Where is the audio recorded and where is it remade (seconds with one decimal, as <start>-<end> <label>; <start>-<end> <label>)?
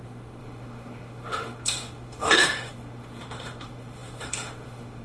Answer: 0.0-5.0 remade